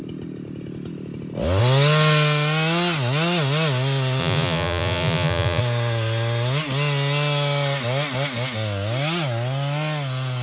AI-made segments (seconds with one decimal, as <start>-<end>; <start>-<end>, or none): 4.2-5.6